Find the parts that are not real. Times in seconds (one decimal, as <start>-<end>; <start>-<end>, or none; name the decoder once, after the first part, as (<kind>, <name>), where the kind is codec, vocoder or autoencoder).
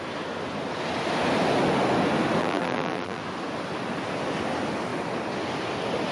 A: 2.4-3.2 (vocoder, BigVGAN v2)